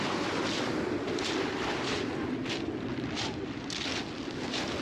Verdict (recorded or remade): recorded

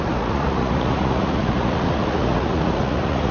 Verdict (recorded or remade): remade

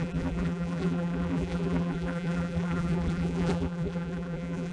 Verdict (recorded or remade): remade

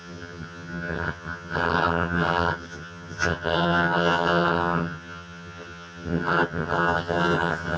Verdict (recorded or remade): remade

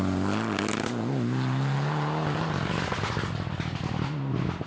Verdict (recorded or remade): recorded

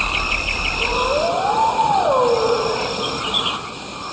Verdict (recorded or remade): recorded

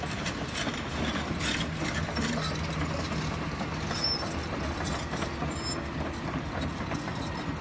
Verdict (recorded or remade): recorded